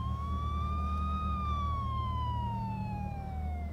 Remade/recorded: remade